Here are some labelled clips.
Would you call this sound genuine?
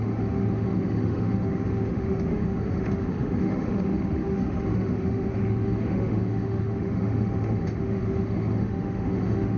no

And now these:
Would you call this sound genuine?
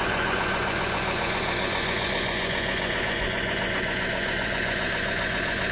no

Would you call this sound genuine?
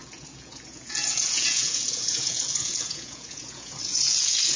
no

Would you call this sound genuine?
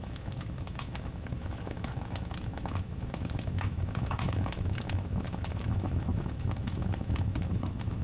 no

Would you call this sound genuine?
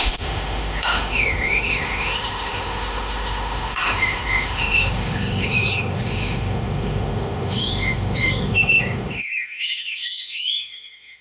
no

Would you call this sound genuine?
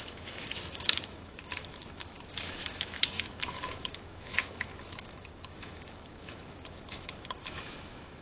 no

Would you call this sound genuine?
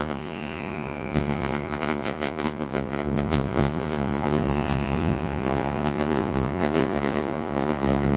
no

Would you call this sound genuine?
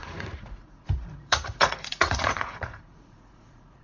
no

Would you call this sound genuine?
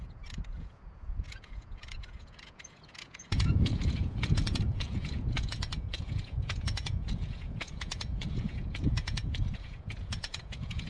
no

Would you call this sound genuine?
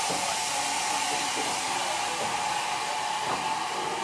yes